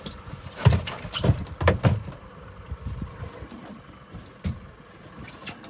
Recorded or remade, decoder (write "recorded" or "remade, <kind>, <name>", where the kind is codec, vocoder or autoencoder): recorded